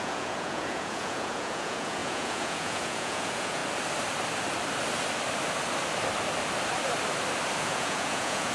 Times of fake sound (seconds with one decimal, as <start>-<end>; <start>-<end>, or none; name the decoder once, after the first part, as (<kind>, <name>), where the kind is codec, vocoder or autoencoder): 0.0-3.6 (vocoder, Vocos); 7.6-8.5